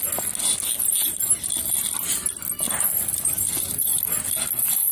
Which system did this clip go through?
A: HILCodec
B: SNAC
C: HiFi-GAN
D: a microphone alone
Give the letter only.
D